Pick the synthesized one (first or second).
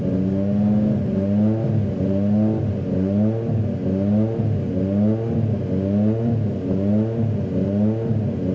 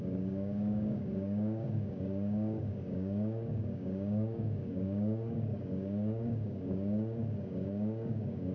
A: second